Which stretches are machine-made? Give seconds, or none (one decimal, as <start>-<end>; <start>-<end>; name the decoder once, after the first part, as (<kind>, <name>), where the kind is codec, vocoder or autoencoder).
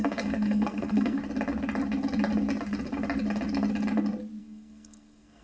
0.0-1.2 (codec, SNAC); 4.4-5.4